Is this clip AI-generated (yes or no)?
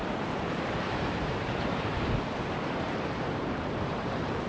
yes